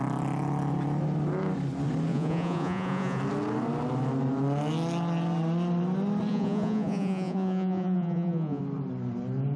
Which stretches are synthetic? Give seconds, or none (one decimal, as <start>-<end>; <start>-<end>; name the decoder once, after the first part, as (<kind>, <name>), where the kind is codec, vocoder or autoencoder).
2.1-3.2 (vocoder, Vocos); 6.3-8.6